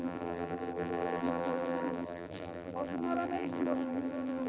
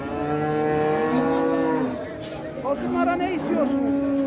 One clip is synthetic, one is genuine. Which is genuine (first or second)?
second